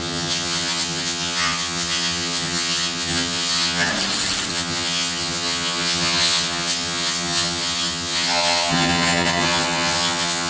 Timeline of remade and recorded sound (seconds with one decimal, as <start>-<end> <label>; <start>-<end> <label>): 0.0-3.9 remade; 3.9-4.5 recorded; 4.5-10.5 remade